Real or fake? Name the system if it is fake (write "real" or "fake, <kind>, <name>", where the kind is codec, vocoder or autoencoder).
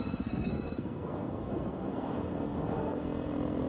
fake, codec, SNAC